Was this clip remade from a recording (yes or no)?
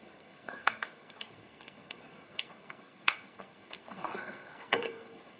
yes